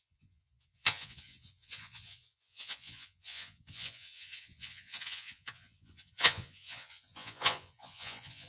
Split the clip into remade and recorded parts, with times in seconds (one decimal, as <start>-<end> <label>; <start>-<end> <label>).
0.0-8.5 remade